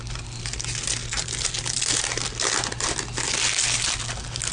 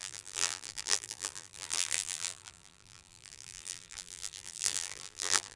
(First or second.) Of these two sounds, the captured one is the first